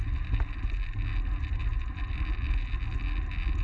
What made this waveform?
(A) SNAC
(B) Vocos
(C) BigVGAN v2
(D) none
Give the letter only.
D